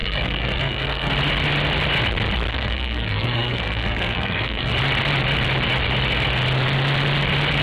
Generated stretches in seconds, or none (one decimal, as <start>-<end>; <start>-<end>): 0.0-1.1; 2.5-4.7